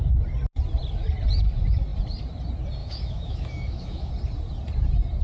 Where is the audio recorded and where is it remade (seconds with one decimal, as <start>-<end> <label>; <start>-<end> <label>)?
0.0-2.8 recorded; 2.8-4.1 remade; 4.1-5.2 recorded